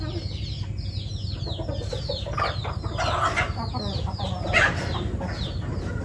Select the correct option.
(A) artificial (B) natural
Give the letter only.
B